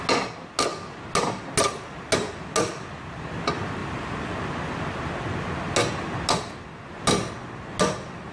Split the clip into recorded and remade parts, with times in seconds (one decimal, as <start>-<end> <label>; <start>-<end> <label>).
0.0-8.3 recorded